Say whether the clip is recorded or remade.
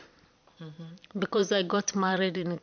remade